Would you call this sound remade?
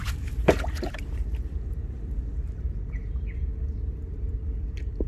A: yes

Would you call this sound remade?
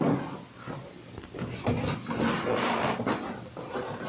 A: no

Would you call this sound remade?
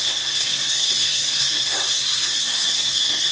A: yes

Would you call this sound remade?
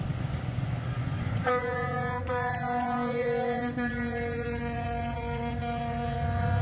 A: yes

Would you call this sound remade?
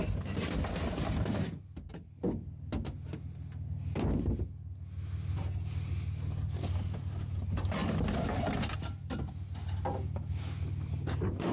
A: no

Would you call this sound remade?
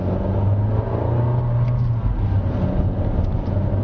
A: no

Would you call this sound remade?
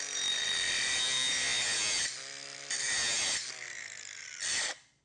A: yes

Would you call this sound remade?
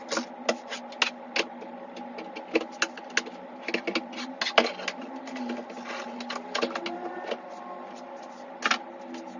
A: no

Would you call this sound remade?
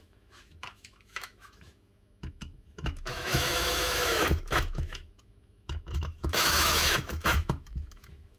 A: yes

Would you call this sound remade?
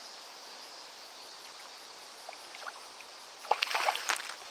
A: no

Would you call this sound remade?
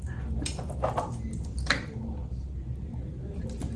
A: no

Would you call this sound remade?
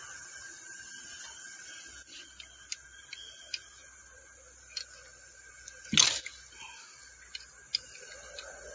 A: no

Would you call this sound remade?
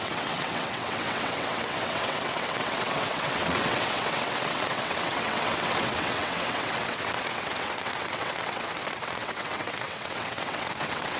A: yes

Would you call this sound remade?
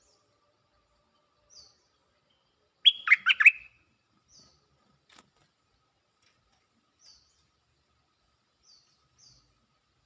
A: no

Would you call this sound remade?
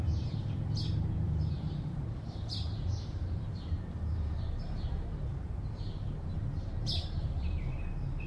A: yes